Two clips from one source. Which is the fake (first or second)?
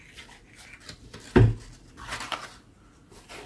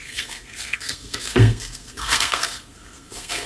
second